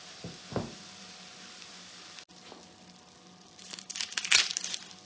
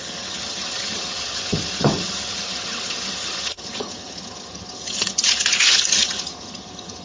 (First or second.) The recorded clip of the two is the first